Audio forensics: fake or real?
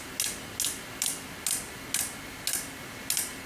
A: real